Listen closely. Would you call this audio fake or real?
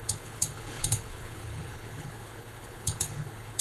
fake